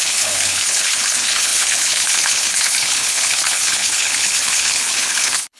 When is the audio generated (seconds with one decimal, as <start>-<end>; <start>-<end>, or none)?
0.0-5.6